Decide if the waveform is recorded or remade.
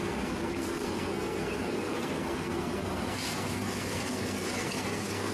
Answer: remade